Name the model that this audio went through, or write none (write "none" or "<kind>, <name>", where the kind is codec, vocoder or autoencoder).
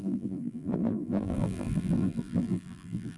vocoder, BigVGAN v2